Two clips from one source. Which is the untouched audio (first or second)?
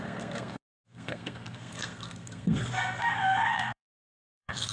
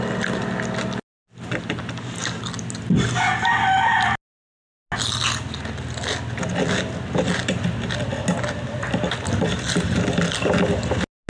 second